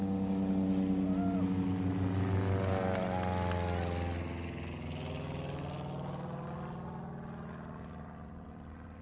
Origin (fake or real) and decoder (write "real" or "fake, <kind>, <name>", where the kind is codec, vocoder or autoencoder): real